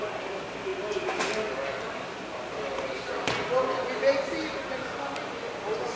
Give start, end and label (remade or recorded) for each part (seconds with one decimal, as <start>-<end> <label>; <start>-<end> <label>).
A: 0.0-6.0 recorded